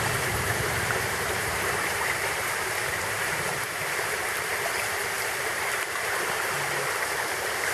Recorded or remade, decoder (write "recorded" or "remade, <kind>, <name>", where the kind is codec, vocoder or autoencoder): remade, vocoder, BigVGAN v2